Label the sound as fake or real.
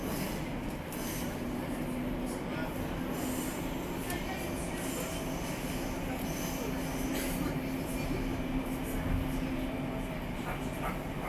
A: real